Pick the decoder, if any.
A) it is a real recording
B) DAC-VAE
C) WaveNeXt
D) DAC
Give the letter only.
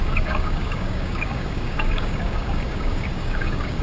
D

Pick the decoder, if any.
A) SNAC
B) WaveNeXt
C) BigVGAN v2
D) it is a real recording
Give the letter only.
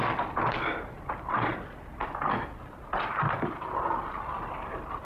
D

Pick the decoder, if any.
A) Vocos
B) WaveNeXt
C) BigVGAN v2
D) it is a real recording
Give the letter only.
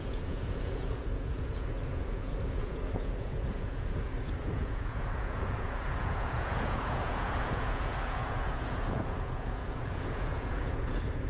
A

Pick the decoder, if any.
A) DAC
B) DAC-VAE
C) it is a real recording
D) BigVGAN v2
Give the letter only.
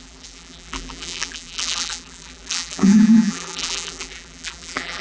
D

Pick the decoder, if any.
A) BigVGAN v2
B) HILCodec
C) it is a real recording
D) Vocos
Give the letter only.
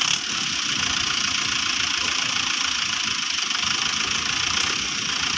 A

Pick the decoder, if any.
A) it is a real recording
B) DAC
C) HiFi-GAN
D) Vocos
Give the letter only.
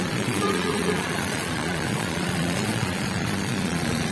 D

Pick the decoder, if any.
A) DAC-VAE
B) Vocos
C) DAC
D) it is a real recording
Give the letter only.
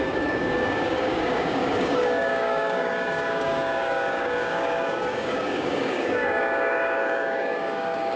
C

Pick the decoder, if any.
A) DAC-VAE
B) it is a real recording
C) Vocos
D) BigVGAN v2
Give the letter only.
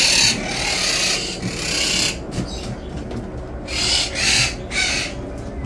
B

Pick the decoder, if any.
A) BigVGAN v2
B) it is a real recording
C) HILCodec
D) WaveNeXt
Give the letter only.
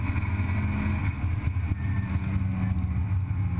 B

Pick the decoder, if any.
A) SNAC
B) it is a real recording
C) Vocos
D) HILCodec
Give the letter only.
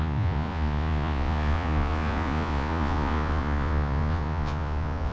C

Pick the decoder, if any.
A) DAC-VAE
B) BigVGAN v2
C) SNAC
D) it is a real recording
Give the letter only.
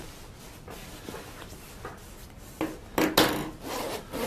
D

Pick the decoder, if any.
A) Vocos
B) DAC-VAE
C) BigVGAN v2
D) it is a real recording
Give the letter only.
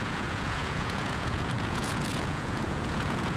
A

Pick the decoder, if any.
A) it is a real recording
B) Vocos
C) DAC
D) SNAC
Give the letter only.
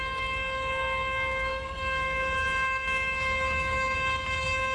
C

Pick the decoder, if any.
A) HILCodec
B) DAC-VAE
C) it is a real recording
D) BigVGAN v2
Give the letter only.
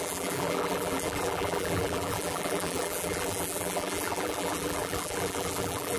D